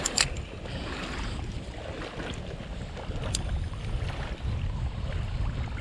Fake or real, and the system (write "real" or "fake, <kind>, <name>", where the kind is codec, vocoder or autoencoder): real